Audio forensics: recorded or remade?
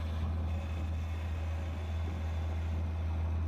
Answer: recorded